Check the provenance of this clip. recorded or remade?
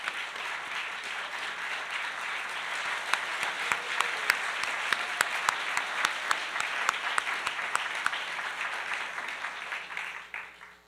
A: recorded